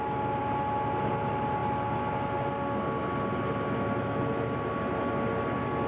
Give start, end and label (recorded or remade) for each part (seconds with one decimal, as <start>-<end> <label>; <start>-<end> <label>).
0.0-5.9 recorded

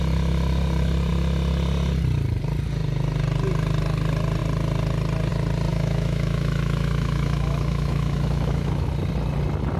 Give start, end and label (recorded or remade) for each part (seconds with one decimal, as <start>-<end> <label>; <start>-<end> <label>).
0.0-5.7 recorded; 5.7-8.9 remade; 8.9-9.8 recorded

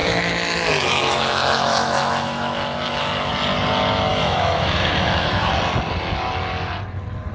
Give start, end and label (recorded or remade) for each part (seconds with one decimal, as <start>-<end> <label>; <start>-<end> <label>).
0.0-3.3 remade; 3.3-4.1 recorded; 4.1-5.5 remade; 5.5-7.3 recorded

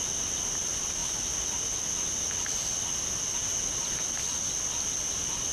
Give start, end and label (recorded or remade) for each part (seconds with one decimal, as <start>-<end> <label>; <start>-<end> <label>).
0.0-5.5 recorded

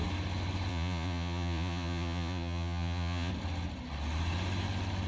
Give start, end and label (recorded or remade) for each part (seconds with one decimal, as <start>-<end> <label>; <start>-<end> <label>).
0.0-0.7 recorded; 0.7-3.3 remade; 3.3-5.1 recorded

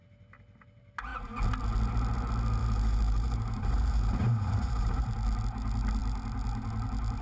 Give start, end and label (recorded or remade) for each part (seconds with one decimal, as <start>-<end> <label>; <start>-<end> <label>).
0.0-2.6 recorded; 2.6-5.1 remade; 5.1-7.2 recorded

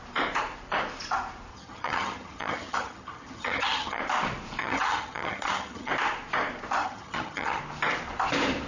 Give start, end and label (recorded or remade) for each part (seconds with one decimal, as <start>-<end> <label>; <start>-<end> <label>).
0.0-1.5 recorded; 1.5-4.0 remade; 4.0-4.6 recorded; 4.6-5.9 remade; 5.9-6.8 recorded; 6.8-7.6 remade; 7.6-8.7 recorded

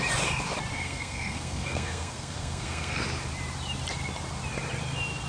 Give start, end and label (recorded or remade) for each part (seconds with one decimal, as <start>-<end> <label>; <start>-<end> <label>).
0.0-0.7 recorded; 0.7-3.0 remade; 3.0-5.3 recorded